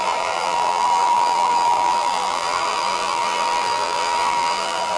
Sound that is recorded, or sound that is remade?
remade